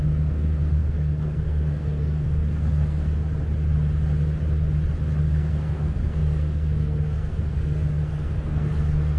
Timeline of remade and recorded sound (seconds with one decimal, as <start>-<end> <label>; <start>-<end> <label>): 0.0-3.2 remade; 3.2-5.2 recorded; 5.2-9.2 remade